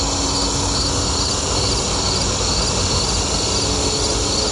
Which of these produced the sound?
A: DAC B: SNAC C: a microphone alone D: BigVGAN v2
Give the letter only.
C